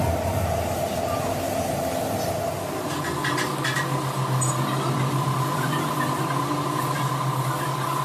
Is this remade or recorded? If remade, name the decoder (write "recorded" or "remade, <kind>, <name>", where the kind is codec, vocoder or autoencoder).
recorded